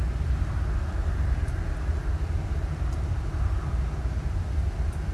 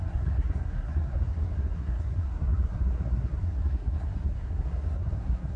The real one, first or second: first